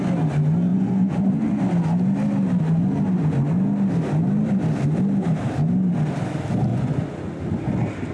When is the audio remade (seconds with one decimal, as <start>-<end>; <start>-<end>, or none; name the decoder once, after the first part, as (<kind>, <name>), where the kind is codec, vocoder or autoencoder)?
0.7-1.6 (vocoder, Vocos); 6.7-7.4